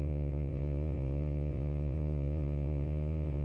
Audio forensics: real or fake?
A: fake